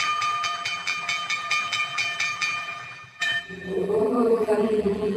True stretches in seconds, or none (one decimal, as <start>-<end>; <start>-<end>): none

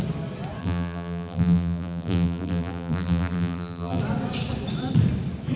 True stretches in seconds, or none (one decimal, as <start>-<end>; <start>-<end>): 0.0-0.6; 4.0-5.6

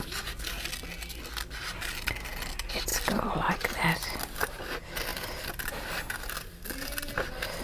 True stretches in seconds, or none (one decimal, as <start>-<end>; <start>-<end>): 0.0-2.9; 4.4-5.1; 6.1-7.6